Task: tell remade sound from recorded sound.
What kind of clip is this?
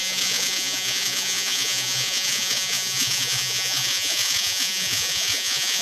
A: remade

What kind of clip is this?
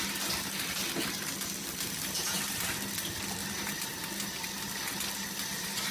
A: recorded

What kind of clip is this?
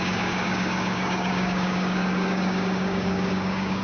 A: remade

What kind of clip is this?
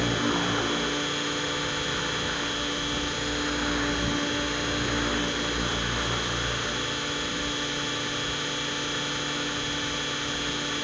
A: recorded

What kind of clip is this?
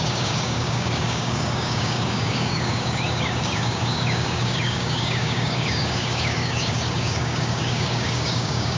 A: remade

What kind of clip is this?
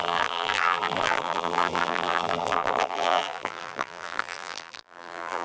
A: remade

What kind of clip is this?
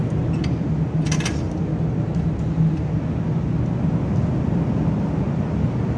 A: recorded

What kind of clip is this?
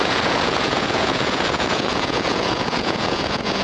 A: remade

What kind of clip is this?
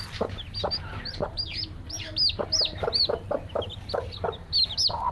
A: recorded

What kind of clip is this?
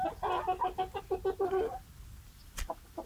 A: recorded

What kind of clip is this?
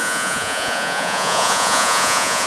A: remade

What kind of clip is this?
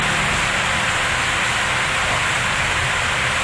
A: recorded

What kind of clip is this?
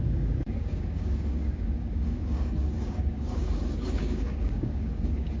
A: remade